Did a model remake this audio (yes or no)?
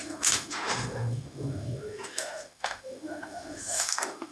yes